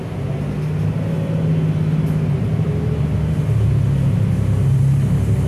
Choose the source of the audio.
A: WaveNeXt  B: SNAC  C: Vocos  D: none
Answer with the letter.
D